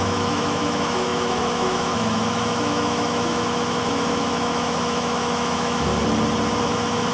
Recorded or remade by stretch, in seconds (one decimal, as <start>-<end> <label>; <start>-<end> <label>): 0.0-5.9 remade; 5.9-6.6 recorded; 6.6-7.1 remade